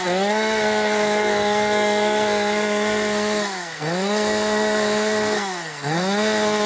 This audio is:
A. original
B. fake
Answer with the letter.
B